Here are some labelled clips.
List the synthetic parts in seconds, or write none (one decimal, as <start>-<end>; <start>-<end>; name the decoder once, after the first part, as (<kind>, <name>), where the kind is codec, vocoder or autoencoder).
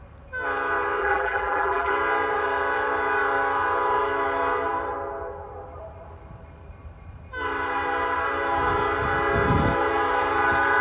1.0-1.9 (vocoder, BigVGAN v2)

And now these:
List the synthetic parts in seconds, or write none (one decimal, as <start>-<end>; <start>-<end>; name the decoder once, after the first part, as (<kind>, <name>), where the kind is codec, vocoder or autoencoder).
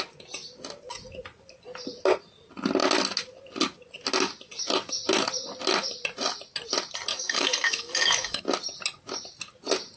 7.1-8.4 (codec, DAC)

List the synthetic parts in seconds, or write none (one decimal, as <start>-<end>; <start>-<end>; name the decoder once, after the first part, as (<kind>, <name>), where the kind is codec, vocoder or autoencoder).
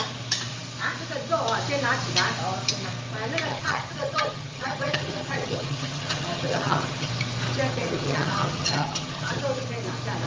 3.5-7.1 (vocoder, HiFi-GAN); 7.8-9.4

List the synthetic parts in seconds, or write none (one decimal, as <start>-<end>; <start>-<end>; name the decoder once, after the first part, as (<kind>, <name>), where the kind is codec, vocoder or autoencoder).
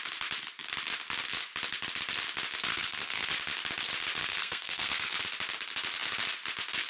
2.7-3.3 (codec, SNAC); 4.2-5.2